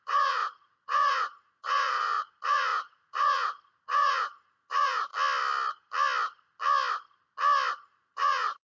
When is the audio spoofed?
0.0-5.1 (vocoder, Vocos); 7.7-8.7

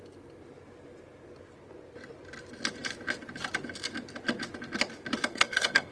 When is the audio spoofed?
5.3-5.9 (codec, SNAC)

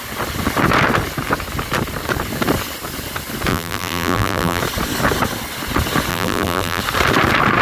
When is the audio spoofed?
3.5-4.6 (vocoder, BigVGAN v2); 6.1-6.8